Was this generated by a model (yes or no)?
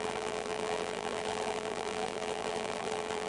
yes